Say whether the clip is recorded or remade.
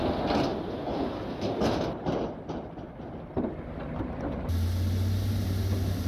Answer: recorded